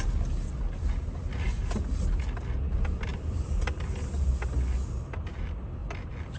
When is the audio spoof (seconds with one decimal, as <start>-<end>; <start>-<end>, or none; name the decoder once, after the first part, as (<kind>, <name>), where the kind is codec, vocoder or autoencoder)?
3.1-4.4 (vocoder, BigVGAN v2); 5.8-6.4